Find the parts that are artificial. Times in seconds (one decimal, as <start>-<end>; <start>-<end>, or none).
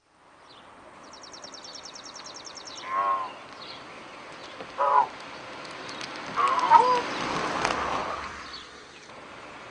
4.4-5.2